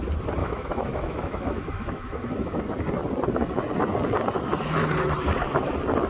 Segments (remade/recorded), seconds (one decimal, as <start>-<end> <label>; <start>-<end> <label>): 0.0-0.4 recorded; 0.4-2.6 remade; 2.6-6.1 recorded